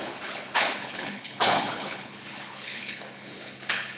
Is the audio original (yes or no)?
no